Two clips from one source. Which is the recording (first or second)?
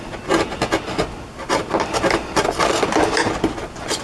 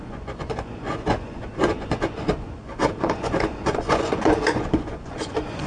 first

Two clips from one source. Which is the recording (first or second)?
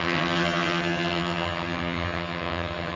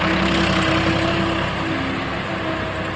second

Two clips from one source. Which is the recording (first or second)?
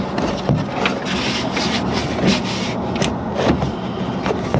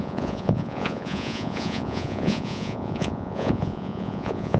first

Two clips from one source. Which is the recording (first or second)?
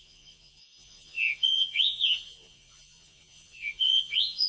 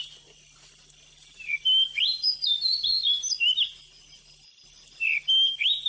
second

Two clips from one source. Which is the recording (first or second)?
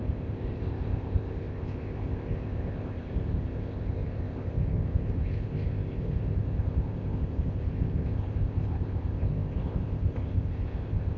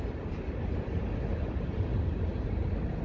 second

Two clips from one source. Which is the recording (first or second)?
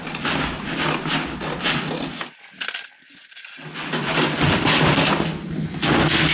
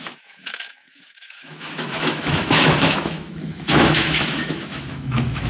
first